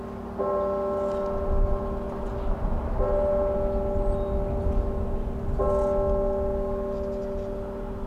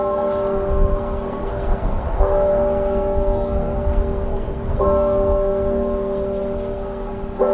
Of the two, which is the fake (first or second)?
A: second